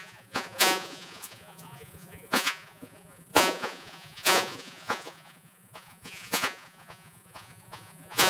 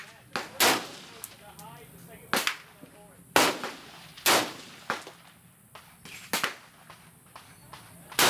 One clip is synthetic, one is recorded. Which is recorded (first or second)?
second